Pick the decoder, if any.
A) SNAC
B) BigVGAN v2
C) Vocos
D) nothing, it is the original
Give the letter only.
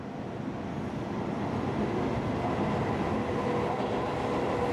D